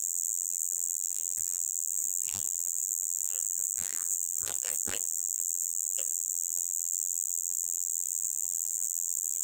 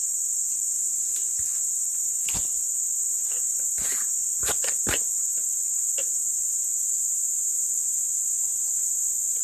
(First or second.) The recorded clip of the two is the second